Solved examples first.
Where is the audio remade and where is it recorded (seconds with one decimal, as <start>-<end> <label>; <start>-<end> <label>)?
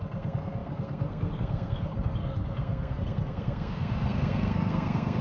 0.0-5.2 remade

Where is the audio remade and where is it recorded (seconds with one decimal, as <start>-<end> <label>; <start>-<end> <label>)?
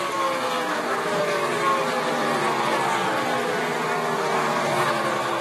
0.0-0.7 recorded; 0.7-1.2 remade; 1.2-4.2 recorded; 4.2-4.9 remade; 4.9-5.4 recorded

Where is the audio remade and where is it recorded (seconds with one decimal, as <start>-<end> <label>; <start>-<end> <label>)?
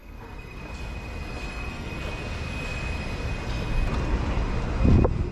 0.0-0.6 remade; 0.6-1.3 recorded; 1.3-1.9 remade; 1.9-5.3 recorded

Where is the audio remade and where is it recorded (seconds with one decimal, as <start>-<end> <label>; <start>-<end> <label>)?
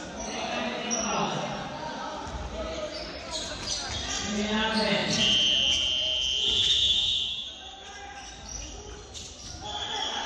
0.0-10.3 recorded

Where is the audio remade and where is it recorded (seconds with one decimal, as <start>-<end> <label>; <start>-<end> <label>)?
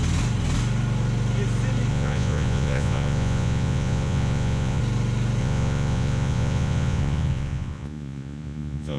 0.0-1.9 recorded; 1.9-4.8 remade; 4.8-5.4 recorded; 5.4-9.0 remade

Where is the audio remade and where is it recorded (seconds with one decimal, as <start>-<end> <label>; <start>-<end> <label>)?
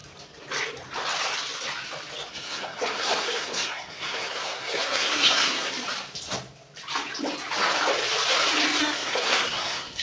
0.0-2.3 recorded; 2.3-5.7 remade; 5.7-8.8 recorded; 8.8-10.0 remade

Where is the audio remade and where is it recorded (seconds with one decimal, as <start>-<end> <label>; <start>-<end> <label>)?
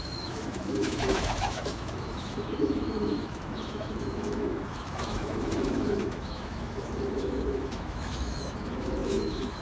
0.0-9.6 remade